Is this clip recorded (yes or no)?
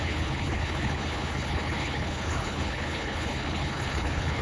no